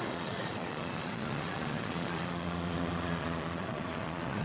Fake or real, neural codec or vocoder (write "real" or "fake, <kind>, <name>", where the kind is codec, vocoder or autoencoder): fake, vocoder, Vocos